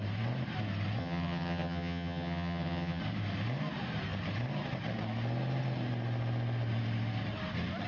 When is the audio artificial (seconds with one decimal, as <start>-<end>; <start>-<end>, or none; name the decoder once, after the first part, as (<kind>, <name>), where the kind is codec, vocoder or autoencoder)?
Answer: 1.0-3.0 (vocoder, HiFi-GAN)